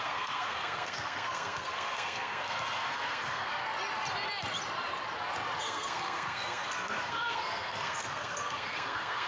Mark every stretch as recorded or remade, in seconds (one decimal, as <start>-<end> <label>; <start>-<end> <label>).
0.0-3.6 remade; 3.6-5.6 recorded; 5.6-9.3 remade